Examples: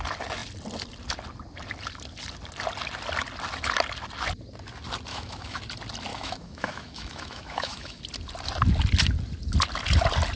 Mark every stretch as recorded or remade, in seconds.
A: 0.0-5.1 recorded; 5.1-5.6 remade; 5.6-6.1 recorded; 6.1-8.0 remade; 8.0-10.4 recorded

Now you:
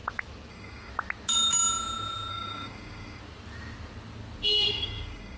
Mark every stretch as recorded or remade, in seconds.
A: 0.0-0.5 recorded; 0.5-0.9 remade; 0.9-2.3 recorded; 2.3-3.2 remade; 3.2-4.7 recorded; 4.7-5.4 remade

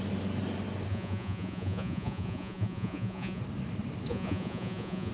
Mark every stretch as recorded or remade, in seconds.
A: 0.0-0.9 recorded; 0.9-3.4 remade; 3.4-4.1 recorded; 4.1-5.1 remade

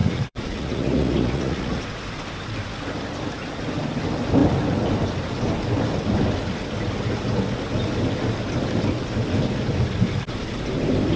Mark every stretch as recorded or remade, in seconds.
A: 0.0-1.8 remade; 1.8-11.2 recorded

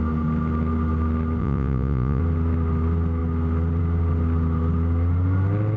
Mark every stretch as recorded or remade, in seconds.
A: 0.0-1.4 recorded; 1.4-2.2 remade; 2.2-5.8 recorded